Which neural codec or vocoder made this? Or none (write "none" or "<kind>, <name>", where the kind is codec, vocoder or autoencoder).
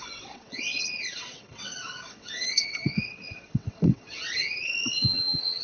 vocoder, WaveNeXt